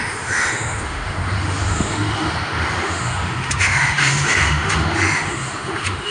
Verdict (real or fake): fake